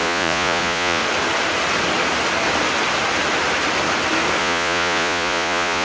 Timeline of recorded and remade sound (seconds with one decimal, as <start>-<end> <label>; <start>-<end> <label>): 0.0-1.0 remade; 1.0-4.4 recorded; 4.4-5.8 remade